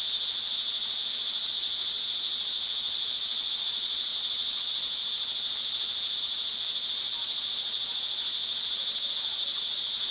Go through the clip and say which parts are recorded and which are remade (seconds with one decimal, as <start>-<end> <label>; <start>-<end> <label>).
0.0-0.5 remade; 0.5-1.5 recorded; 1.5-4.1 remade; 4.1-6.2 recorded; 6.2-7.2 remade; 7.2-9.1 recorded; 9.1-10.1 remade